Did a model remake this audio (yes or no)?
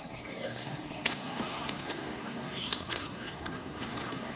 yes